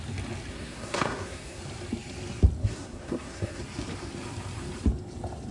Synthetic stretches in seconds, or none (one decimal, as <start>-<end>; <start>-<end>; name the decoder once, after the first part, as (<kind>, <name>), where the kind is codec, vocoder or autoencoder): 0.5-1.6 (codec, SNAC); 2.6-3.6

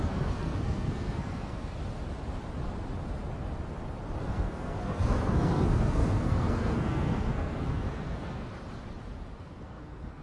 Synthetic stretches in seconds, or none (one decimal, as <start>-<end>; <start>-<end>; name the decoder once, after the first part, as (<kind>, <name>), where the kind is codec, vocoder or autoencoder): 0.0-1.8 (codec, SNAC); 4.2-8.5; 9.4-10.2